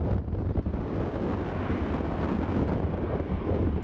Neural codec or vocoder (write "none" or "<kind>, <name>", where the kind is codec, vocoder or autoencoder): none